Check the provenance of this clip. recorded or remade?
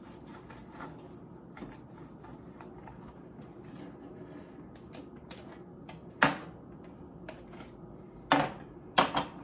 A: recorded